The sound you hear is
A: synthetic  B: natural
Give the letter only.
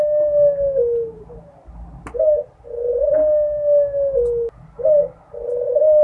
B